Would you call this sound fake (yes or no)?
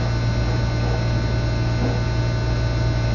no